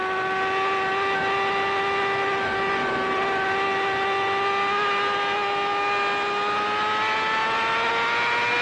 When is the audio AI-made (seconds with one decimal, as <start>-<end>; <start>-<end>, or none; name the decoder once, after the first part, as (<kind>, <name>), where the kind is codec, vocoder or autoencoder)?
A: none